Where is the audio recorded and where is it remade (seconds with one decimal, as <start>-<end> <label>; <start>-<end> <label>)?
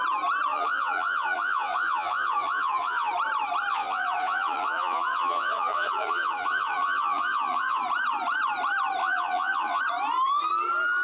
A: 0.0-0.5 recorded; 0.5-3.1 remade; 3.1-3.7 recorded; 3.7-7.8 remade; 7.8-9.0 recorded; 9.0-9.8 remade; 9.8-11.0 recorded